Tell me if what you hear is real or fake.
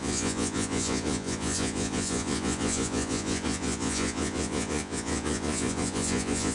fake